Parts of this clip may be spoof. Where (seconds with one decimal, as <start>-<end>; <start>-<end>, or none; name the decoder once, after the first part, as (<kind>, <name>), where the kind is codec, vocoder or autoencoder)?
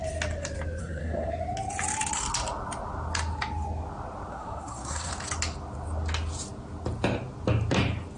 0.8-1.3 (codec, SNAC); 4.3-5.1